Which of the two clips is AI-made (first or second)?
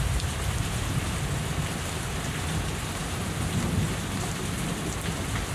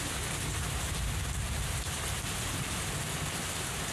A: second